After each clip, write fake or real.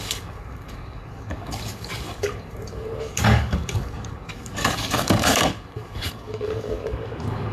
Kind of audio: fake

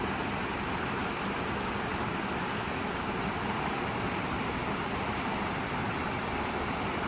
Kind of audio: real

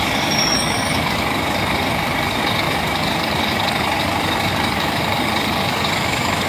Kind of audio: fake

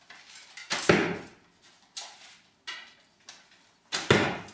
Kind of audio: real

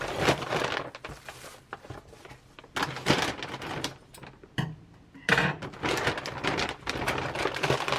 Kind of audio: real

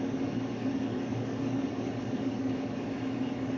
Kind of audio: fake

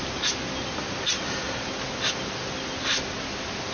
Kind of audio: real